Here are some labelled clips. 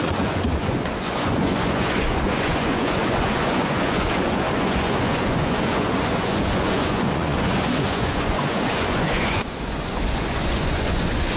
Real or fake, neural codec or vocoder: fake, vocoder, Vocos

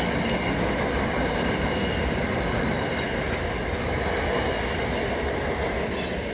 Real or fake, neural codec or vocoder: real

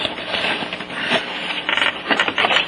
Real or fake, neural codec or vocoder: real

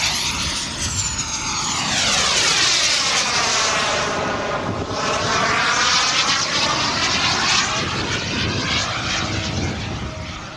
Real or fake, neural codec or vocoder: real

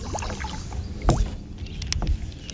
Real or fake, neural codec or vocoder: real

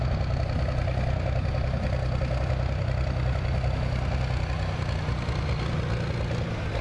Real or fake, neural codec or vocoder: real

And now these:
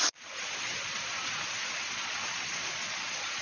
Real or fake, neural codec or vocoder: fake, vocoder, Vocos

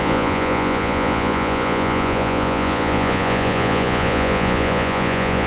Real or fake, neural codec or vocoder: fake, vocoder, Vocos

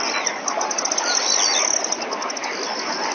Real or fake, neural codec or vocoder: real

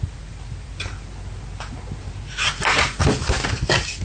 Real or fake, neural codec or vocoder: real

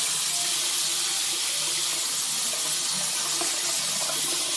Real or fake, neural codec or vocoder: real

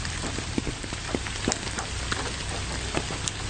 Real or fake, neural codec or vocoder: real